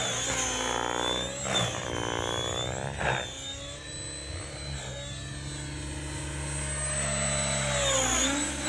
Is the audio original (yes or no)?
yes